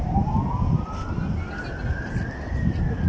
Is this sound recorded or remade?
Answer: recorded